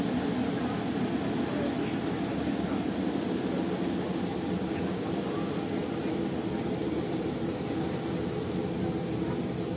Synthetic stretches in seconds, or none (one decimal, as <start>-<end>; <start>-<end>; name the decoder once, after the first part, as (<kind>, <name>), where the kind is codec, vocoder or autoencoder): none